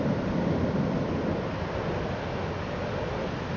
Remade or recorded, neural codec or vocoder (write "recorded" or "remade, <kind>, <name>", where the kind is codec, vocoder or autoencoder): recorded